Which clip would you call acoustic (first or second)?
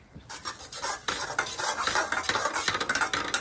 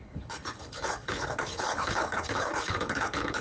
first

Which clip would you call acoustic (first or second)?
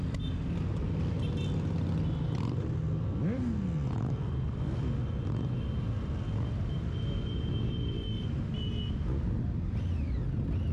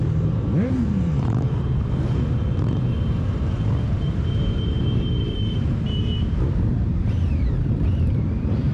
first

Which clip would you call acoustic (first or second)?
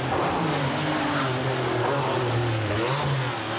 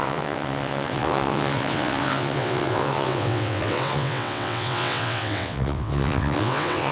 first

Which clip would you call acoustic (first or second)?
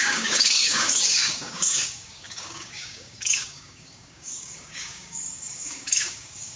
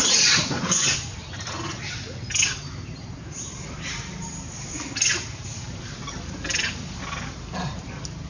second